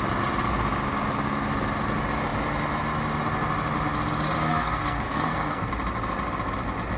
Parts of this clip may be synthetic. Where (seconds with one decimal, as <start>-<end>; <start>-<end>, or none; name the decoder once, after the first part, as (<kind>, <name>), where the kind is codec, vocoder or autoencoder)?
4.5-5.7 (codec, SNAC)